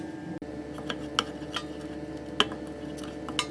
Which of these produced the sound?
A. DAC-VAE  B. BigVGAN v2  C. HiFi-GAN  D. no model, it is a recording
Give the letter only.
D